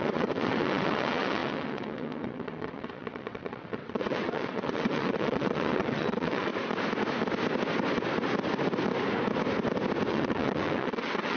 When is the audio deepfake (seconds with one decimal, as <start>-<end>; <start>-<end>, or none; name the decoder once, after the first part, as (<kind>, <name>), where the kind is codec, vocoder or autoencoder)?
0.0-6.5 (vocoder, WaveNeXt); 10.1-11.4